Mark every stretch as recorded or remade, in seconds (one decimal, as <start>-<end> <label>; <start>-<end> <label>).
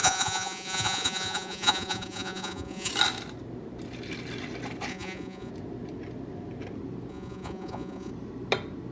0.0-2.9 remade; 2.9-4.9 recorded; 4.9-5.5 remade; 5.5-7.1 recorded; 7.1-8.1 remade; 8.1-8.9 recorded